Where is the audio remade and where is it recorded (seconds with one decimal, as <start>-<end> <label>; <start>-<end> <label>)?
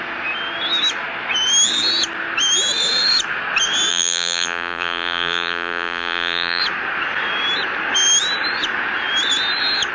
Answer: 0.0-3.9 recorded; 3.9-6.6 remade; 6.6-9.9 recorded